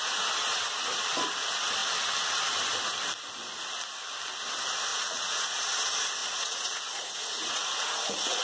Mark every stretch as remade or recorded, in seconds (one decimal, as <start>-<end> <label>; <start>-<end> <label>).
0.0-4.9 recorded; 4.9-5.6 remade; 5.6-6.2 recorded; 6.2-8.4 remade